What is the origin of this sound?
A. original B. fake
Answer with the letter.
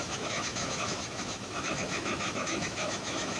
B